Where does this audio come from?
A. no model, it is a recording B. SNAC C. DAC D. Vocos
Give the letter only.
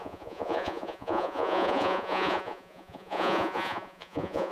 D